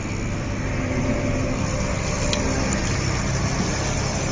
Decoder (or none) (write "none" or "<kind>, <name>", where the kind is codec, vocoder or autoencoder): none